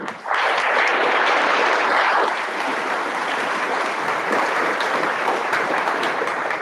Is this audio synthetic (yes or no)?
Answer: yes